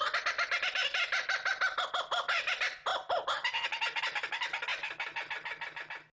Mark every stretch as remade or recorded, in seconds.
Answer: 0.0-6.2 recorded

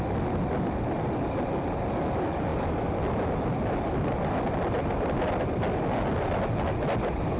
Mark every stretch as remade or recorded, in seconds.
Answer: 0.0-7.4 recorded

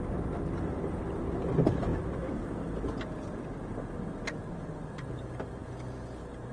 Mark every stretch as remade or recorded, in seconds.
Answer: 0.0-6.5 recorded

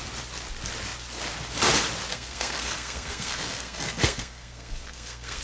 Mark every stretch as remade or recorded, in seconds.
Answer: 0.0-2.1 recorded; 2.1-5.4 remade